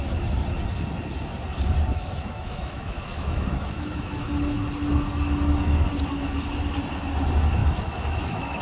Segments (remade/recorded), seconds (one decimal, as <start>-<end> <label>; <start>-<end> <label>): 0.0-1.9 recorded; 1.9-4.2 remade; 4.2-7.6 recorded; 7.6-8.6 remade